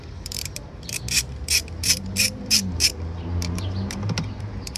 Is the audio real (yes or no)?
no